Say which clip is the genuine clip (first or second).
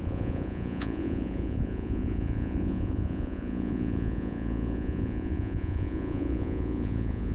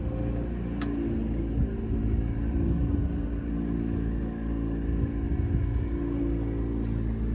second